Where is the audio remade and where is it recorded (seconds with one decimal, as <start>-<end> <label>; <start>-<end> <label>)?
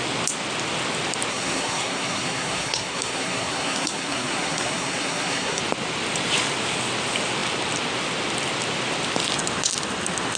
0.0-1.3 recorded; 1.3-5.6 remade; 5.6-10.4 recorded